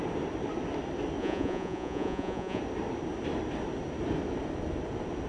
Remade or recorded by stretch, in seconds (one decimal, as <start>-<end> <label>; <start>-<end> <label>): 0.0-1.2 recorded; 1.2-2.6 remade; 2.6-5.3 recorded